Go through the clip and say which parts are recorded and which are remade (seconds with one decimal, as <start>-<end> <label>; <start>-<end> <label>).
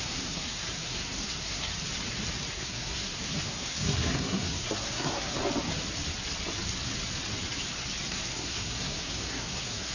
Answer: 0.0-1.7 remade; 1.7-2.5 recorded; 2.5-5.4 remade; 5.4-8.1 recorded; 8.1-9.9 remade